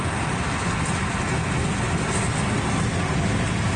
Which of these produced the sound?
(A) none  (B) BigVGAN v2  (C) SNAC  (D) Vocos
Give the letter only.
A